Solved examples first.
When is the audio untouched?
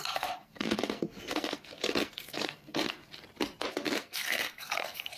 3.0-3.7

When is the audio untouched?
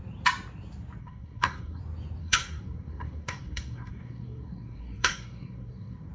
0.0-1.0; 1.8-2.2